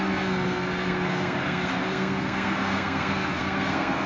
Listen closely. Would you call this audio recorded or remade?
remade